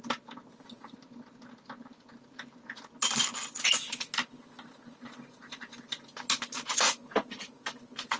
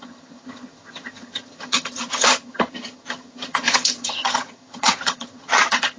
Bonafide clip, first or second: first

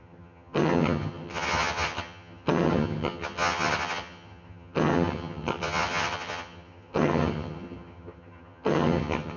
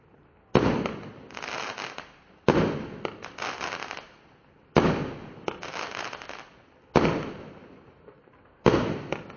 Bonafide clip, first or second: second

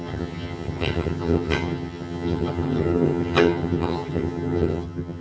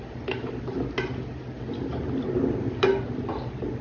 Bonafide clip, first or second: second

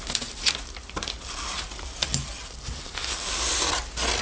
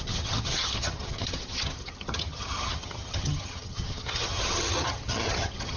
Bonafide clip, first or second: first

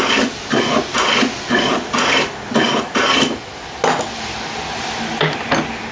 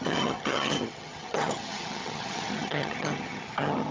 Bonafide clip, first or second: first